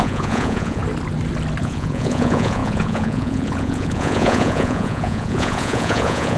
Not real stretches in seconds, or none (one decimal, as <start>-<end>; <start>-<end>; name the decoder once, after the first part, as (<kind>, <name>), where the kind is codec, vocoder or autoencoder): 0.0-0.8 (vocoder, Vocos); 1.6-6.4